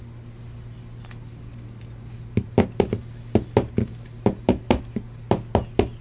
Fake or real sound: real